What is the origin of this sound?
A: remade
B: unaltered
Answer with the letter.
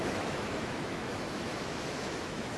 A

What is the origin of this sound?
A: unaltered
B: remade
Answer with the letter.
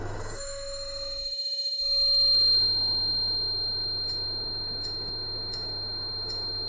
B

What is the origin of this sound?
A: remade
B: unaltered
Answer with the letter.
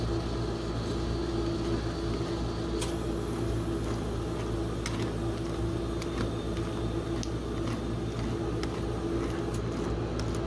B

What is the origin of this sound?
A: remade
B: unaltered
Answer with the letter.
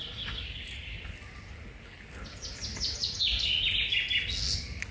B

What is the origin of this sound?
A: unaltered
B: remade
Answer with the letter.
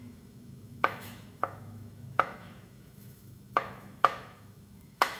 B